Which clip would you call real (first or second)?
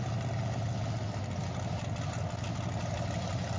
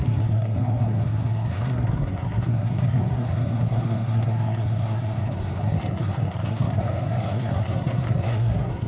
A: first